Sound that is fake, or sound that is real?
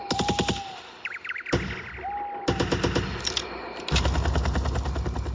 real